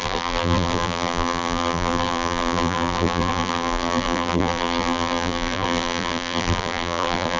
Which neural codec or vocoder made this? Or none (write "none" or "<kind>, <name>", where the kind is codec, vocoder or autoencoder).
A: vocoder, BigVGAN v2